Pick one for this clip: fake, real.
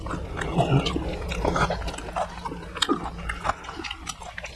real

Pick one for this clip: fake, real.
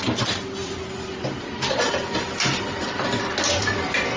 real